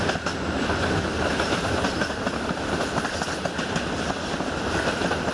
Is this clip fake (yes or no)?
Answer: no